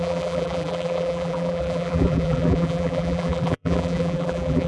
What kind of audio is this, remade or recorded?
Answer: remade